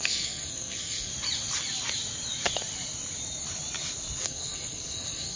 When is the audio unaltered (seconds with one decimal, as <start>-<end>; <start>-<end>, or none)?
1.1-4.2